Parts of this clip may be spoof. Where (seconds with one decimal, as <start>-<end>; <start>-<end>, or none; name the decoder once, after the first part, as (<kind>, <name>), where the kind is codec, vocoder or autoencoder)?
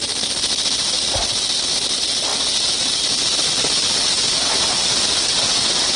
none